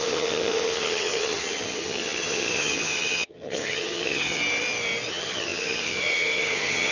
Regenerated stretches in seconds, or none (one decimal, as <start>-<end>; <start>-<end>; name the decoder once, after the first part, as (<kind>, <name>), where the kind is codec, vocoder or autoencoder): 0.0-4.4 (vocoder, HiFi-GAN); 5.1-6.9